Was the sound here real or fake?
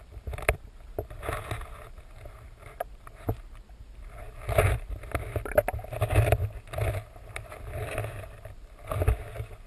real